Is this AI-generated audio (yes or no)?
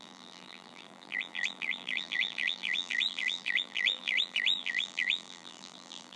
yes